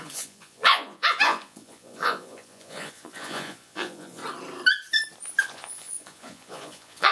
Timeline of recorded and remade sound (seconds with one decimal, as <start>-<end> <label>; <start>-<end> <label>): 0.0-4.2 remade; 4.2-5.4 recorded; 5.4-7.1 remade